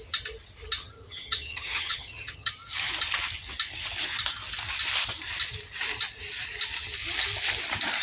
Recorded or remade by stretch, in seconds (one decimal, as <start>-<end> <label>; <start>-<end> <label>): 0.0-0.8 recorded; 0.8-2.5 remade; 2.5-8.0 recorded